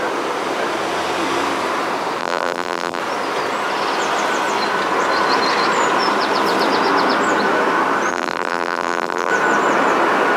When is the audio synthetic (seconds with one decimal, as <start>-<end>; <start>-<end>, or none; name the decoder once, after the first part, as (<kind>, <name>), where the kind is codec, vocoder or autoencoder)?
2.2-3.0 (vocoder, BigVGAN v2); 8.1-9.3